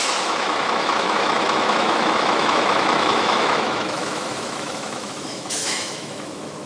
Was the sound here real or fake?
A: fake